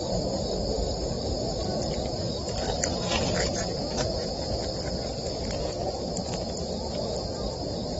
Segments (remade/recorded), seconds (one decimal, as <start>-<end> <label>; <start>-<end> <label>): 0.0-3.0 recorded; 3.0-4.6 remade; 4.6-8.0 recorded